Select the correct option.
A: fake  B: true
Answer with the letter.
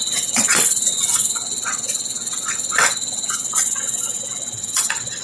A